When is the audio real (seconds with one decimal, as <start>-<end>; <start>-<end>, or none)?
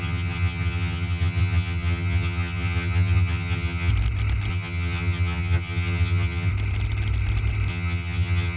3.9-4.5; 6.5-7.7